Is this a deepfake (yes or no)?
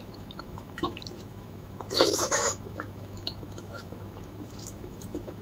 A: yes